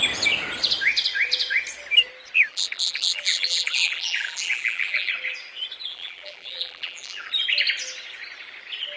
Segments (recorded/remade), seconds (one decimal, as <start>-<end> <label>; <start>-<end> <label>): 0.0-2.5 recorded; 2.5-5.1 remade; 5.1-5.9 recorded; 5.9-7.3 remade; 7.3-9.0 recorded